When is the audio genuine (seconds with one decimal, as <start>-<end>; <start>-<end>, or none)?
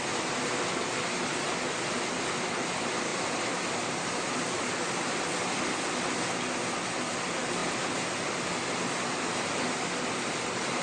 0.0-10.8